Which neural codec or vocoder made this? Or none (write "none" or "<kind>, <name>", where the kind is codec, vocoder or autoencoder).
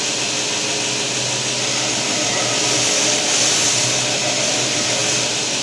none